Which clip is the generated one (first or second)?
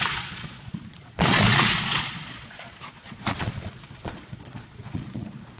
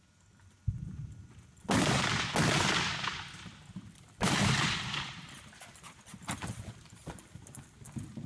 first